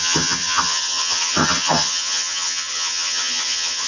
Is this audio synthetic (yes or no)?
yes